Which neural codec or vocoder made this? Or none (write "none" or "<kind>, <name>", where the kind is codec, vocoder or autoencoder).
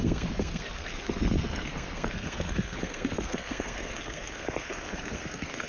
codec, SNAC